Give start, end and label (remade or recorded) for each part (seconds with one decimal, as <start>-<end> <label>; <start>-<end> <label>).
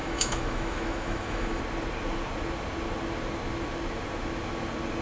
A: 0.0-1.6 remade; 1.6-5.0 recorded